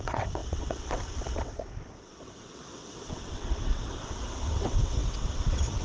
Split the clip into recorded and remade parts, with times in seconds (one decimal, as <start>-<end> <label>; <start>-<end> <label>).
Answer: 0.0-5.8 remade